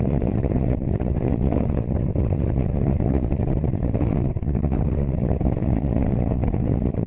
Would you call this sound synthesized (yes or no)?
yes